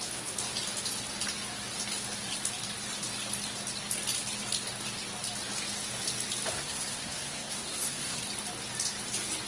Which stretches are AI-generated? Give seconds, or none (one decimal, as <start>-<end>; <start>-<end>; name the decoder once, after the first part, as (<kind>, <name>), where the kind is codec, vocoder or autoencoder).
6.5-8.2 (codec, SNAC)